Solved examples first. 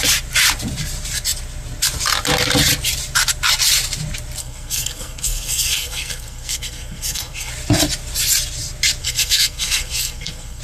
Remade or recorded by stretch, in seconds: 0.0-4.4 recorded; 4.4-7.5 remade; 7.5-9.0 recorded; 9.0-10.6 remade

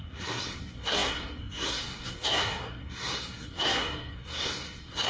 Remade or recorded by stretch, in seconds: 0.0-5.1 remade

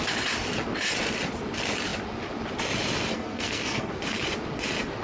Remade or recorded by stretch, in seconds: 0.0-3.1 recorded; 3.1-4.0 remade; 4.0-5.0 recorded

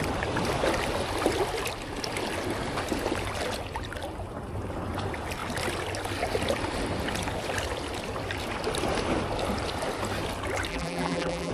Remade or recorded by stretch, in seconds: 0.0-10.7 recorded; 10.7-11.5 remade

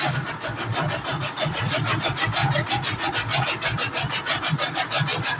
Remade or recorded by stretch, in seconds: 0.0-1.2 recorded; 1.2-1.8 remade; 1.8-2.4 recorded; 2.4-3.1 remade; 3.1-5.4 recorded

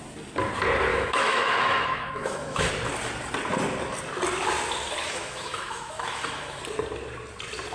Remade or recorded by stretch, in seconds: 0.0-0.9 recorded; 0.9-2.7 remade; 2.7-5.0 recorded; 5.0-6.6 remade; 6.6-7.7 recorded